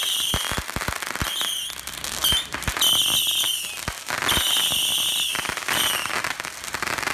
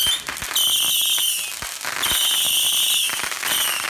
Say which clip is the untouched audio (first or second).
second